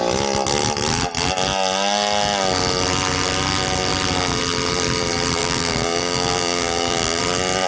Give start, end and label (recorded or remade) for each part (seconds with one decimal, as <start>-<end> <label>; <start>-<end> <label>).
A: 0.0-5.4 recorded; 5.4-7.2 remade; 7.2-7.7 recorded